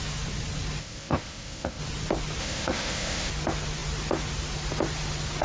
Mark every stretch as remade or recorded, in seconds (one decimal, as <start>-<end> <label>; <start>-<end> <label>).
0.0-0.8 recorded; 0.8-1.8 remade; 1.8-2.4 recorded; 2.4-3.3 remade; 3.3-5.4 recorded